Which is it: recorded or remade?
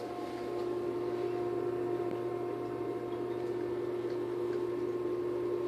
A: remade